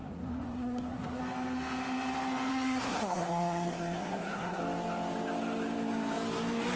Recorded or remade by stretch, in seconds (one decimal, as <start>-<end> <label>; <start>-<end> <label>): 0.0-1.2 remade; 1.2-2.5 recorded; 2.5-4.6 remade; 4.6-6.8 recorded